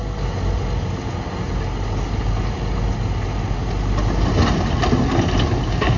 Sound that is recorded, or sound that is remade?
recorded